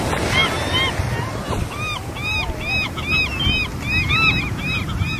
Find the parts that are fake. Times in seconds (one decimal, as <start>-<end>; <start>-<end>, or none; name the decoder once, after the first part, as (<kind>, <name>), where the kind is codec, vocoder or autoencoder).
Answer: none